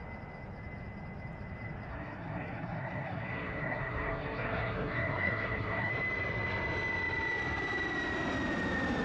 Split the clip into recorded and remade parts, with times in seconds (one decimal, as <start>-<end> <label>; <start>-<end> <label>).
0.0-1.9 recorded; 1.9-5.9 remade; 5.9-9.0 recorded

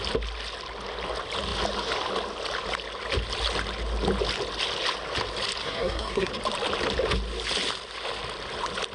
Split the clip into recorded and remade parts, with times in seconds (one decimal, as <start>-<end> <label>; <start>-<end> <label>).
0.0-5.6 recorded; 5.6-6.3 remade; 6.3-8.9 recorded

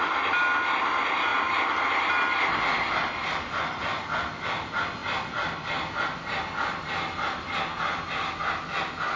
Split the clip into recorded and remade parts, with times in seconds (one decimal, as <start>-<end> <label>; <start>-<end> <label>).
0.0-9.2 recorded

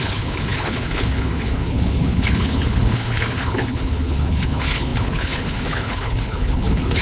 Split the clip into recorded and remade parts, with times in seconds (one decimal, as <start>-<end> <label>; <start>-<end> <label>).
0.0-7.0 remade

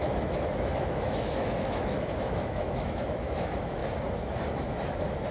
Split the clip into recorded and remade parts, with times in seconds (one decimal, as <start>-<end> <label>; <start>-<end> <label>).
0.0-3.8 remade; 3.8-4.5 recorded; 4.5-5.3 remade